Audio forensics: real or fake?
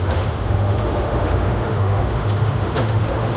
fake